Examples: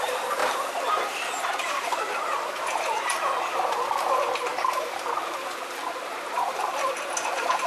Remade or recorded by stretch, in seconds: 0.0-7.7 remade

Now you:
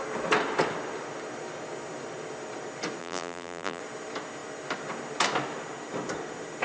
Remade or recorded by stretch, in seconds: 0.0-3.0 recorded; 3.0-3.8 remade; 3.8-6.6 recorded

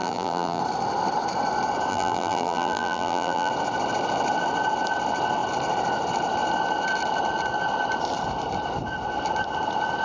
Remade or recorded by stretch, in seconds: 0.0-0.6 remade; 0.6-1.9 recorded; 1.9-3.5 remade; 3.5-10.0 recorded

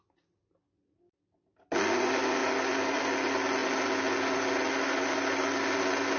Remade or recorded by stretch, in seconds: 0.0-2.4 recorded; 2.4-3.0 remade; 3.0-6.2 recorded

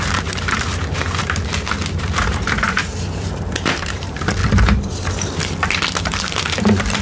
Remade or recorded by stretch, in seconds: 0.0-4.4 remade; 4.4-6.0 recorded; 6.0-7.0 remade

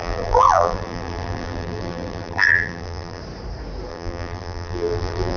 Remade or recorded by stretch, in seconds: 0.0-3.2 remade; 3.2-3.9 recorded; 3.9-5.4 remade